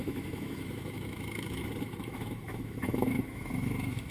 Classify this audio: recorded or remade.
remade